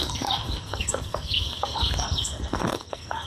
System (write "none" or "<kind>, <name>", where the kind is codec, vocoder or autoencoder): codec, SNAC